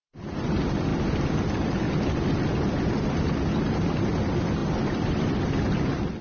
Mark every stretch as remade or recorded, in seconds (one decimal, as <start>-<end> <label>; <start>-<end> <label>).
0.0-4.6 recorded; 4.6-5.2 remade; 5.2-6.2 recorded

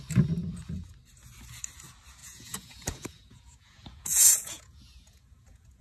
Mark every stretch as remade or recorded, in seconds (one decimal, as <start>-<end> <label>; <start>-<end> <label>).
0.0-2.2 recorded; 2.2-5.8 remade

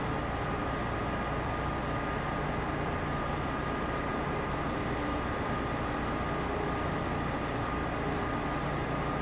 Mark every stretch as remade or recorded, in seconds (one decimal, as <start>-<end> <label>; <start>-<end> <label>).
0.0-9.2 recorded

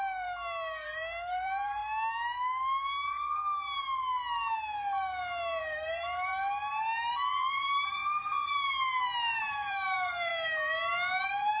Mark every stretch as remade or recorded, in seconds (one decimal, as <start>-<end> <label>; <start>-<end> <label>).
0.0-1.8 remade; 1.8-5.6 recorded; 5.6-6.3 remade; 6.3-7.1 recorded; 7.1-8.0 remade; 8.0-9.4 recorded; 9.4-10.3 remade; 10.3-11.2 recorded; 11.2-11.6 remade

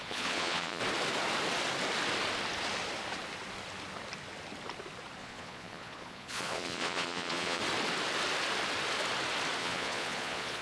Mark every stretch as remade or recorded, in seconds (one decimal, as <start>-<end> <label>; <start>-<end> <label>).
0.0-0.8 remade; 0.8-5.2 recorded; 5.2-7.6 remade; 7.6-9.6 recorded; 9.6-10.6 remade

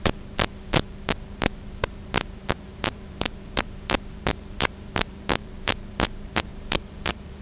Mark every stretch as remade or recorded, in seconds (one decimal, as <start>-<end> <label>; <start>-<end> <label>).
0.0-7.4 remade

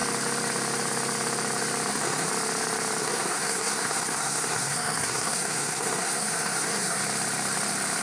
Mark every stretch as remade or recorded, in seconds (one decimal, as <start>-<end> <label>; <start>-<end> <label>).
0.0-1.9 recorded; 1.9-2.3 remade; 2.3-3.0 recorded; 3.0-7.0 remade; 7.0-8.0 recorded